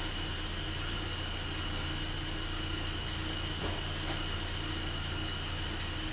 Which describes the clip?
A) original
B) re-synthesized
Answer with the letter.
A